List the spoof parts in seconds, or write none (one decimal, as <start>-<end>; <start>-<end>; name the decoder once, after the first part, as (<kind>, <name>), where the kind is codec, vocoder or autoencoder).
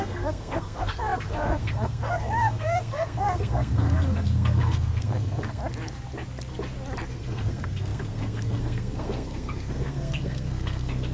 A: 0.0-5.6 (codec, SNAC); 7.1-11.1